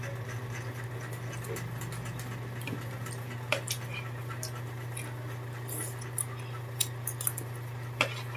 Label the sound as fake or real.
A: real